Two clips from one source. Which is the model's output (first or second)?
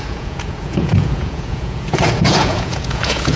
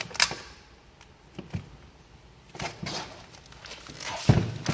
first